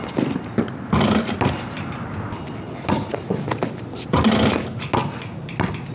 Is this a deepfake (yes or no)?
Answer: no